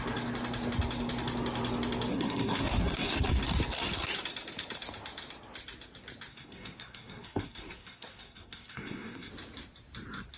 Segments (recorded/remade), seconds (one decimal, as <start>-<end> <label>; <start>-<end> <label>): 0.0-2.1 recorded; 2.1-3.3 remade; 3.3-6.3 recorded; 6.3-9.3 remade; 9.3-10.4 recorded